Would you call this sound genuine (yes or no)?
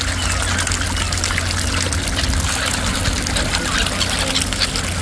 yes